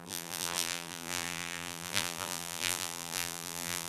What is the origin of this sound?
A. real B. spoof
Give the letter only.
B